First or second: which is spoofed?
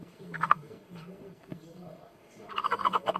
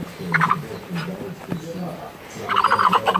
first